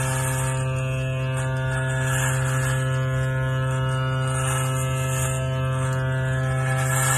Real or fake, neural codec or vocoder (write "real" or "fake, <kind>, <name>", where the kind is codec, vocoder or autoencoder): real